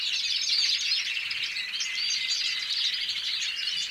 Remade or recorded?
recorded